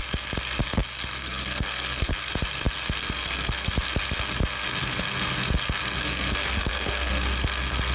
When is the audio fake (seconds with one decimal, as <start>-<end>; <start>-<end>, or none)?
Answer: 1.2-2.3; 3.0-3.7; 6.0-7.2